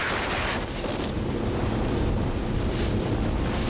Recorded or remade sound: recorded